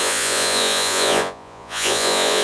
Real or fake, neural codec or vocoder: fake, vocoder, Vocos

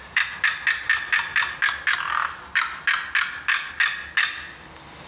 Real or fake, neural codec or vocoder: real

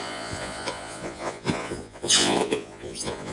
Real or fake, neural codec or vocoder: fake, vocoder, Vocos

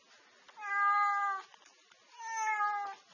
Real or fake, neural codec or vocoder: real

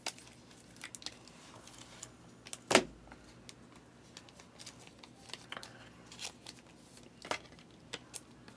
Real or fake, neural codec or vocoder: real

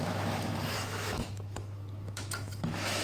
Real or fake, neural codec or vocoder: fake, autoencoder, DAC-VAE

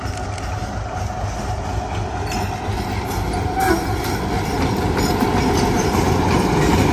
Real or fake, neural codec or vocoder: real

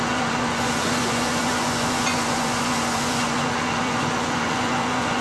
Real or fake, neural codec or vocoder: fake, vocoder, Vocos